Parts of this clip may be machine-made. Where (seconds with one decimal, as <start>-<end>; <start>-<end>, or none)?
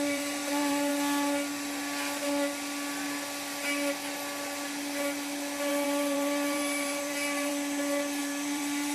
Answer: 0.0-0.9; 5.7-7.5; 8.2-8.9